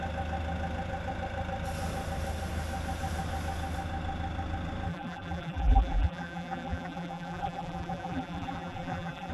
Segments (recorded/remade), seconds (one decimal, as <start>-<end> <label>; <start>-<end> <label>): 0.0-4.9 recorded; 4.9-9.3 remade